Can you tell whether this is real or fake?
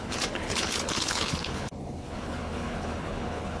fake